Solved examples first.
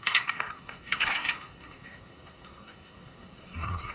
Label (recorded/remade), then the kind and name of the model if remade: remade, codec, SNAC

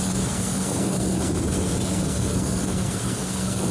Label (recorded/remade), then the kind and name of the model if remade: remade, codec, SNAC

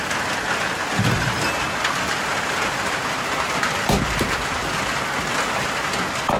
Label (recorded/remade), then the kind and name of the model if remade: recorded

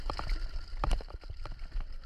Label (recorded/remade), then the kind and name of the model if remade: recorded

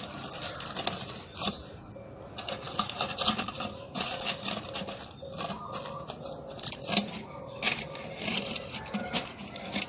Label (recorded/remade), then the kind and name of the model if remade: recorded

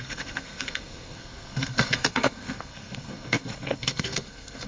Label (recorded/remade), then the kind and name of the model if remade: remade, codec, SNAC